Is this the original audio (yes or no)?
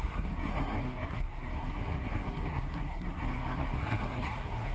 no